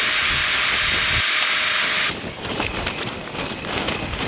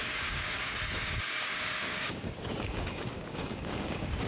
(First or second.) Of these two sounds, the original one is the first